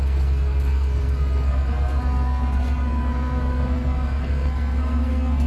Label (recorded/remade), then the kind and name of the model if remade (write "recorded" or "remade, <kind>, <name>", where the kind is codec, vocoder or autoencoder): remade, codec, SNAC